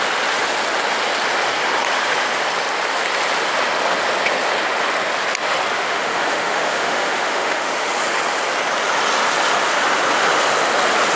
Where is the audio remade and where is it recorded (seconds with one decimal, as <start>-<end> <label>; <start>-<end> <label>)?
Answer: 0.0-5.8 recorded; 5.8-7.9 remade; 7.9-11.2 recorded